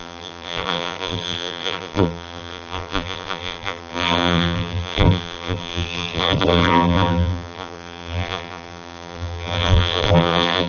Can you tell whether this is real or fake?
fake